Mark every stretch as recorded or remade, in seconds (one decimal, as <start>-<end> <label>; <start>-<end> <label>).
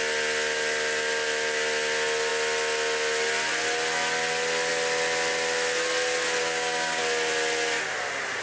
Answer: 0.0-6.4 recorded; 6.4-7.0 remade; 7.0-8.4 recorded